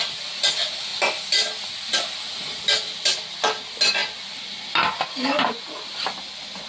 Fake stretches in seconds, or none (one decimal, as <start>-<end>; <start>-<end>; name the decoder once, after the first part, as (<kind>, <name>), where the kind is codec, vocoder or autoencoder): none